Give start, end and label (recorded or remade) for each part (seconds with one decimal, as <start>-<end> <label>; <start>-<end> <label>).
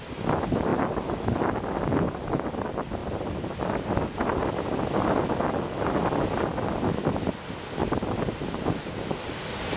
0.0-3.0 recorded; 3.0-4.5 remade; 4.5-7.8 recorded; 7.8-8.9 remade; 8.9-9.8 recorded